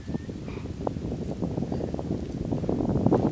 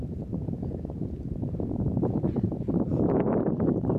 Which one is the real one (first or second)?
first